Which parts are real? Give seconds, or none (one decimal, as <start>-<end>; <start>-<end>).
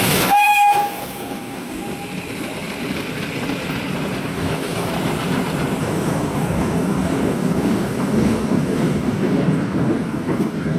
1.8-4.2; 4.9-5.8